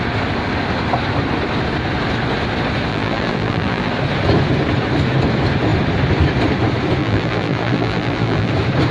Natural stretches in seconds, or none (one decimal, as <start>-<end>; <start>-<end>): 0.0-2.9; 3.9-7.0; 8.5-8.9